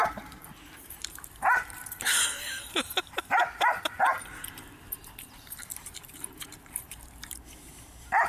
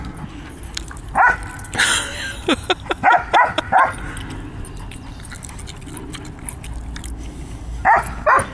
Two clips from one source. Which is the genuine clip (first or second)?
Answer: second